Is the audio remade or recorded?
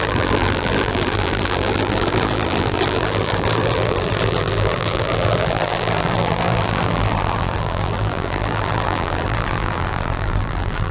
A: remade